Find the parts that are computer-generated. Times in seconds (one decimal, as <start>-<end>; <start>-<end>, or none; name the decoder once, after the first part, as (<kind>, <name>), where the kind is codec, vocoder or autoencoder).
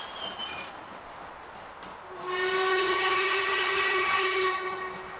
2.7-4.8 (vocoder, HiFi-GAN)